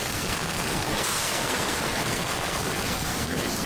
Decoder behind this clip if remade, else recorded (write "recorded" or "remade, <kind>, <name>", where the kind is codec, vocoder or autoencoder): remade, codec, SNAC